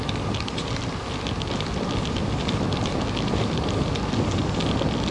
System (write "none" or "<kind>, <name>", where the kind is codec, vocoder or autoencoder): none